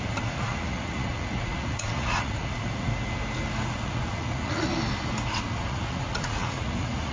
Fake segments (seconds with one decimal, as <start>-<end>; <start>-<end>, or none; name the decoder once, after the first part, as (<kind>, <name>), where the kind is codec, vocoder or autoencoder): 0.0-2.9 (vocoder, Vocos); 3.7-4.7; 5.3-7.1